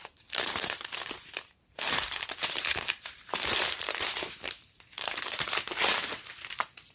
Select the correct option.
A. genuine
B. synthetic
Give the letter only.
B